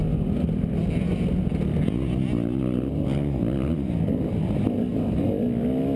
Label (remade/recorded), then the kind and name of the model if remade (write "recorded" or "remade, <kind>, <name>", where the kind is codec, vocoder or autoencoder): recorded